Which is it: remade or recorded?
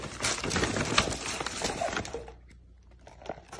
recorded